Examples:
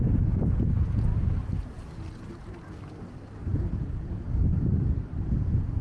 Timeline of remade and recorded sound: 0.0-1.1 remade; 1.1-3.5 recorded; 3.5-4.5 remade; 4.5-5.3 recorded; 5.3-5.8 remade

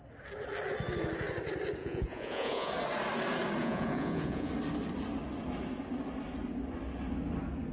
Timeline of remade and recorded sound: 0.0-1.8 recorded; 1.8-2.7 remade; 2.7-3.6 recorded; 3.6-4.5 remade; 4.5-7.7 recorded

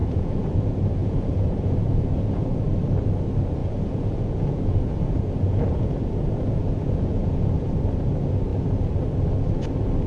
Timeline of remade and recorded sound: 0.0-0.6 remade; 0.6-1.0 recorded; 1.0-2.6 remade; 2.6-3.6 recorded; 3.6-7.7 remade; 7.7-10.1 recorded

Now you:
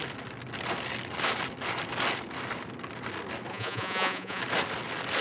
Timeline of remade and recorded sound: 0.0-3.5 recorded; 3.5-4.4 remade; 4.4-5.2 recorded

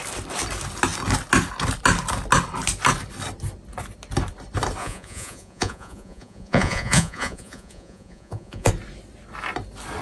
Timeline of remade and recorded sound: 0.0-4.8 recorded; 4.8-8.7 remade; 8.7-10.0 recorded

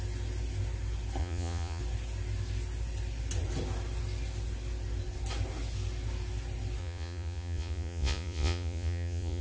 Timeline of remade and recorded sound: 0.0-1.2 recorded; 1.2-1.8 remade; 1.8-6.8 recorded; 6.8-9.4 remade

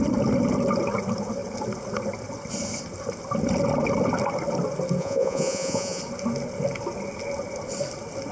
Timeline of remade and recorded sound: 0.0-5.0 recorded; 5.0-6.0 remade; 6.0-8.3 recorded